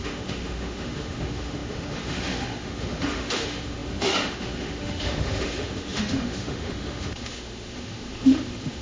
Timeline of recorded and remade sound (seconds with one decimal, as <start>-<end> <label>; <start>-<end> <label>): 0.0-8.8 remade